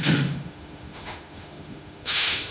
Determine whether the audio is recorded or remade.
remade